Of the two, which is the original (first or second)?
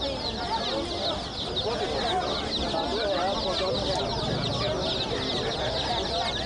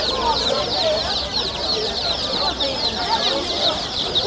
first